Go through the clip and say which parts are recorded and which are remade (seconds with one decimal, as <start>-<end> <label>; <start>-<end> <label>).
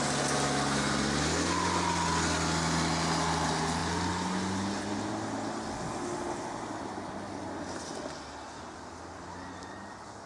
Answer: 0.0-10.3 recorded